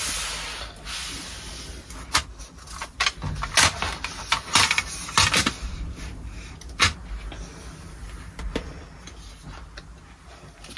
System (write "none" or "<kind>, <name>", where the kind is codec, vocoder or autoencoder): none